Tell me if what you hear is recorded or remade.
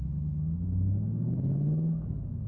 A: recorded